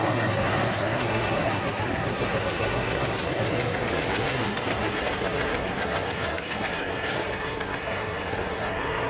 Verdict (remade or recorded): remade